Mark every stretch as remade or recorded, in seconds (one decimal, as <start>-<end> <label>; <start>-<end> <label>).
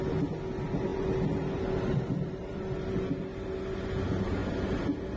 0.0-0.9 recorded; 0.9-2.9 remade; 2.9-5.2 recorded